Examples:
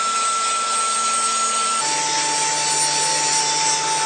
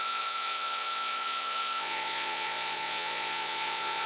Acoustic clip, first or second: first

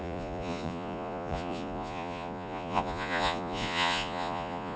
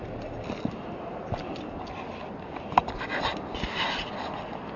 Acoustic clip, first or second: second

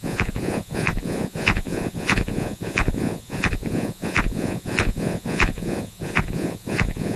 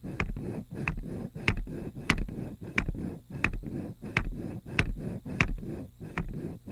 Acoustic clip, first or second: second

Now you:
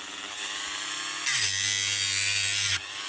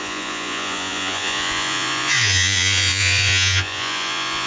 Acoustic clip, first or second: first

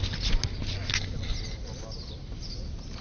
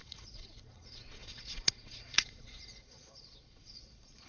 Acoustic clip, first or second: first